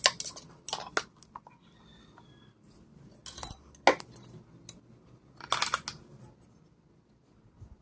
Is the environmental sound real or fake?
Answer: real